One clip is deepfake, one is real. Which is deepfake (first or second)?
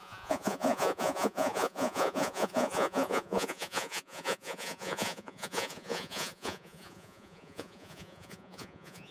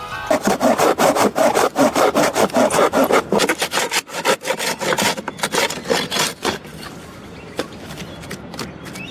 first